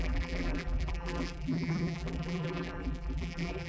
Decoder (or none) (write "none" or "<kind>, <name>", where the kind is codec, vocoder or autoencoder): vocoder, BigVGAN v2